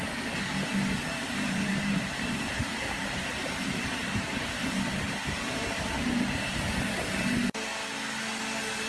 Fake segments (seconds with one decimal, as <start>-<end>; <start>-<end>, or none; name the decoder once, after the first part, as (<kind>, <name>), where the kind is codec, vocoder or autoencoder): 1.1-5.9 (vocoder, BigVGAN v2)